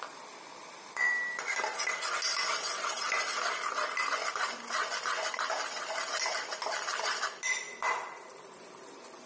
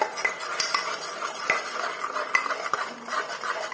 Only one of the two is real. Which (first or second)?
first